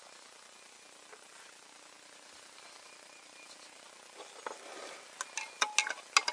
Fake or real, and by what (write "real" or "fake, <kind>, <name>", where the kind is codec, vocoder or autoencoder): real